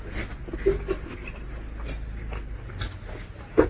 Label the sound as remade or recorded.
recorded